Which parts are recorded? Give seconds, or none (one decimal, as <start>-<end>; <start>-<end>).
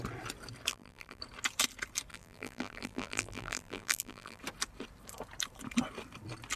0.0-0.7; 1.2-2.1; 4.4-6.6